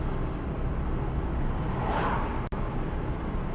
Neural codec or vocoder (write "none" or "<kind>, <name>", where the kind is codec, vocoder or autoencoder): none